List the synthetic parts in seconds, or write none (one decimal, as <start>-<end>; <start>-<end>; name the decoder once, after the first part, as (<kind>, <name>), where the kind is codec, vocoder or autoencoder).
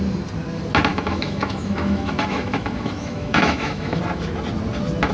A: 0.9-4.0 (autoencoder, DAC-VAE)